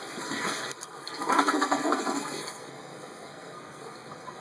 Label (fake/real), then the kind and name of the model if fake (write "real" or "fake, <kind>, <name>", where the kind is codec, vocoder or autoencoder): fake, codec, SNAC